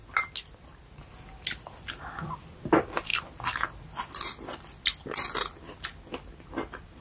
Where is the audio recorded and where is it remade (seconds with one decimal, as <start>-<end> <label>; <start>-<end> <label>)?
0.0-7.0 recorded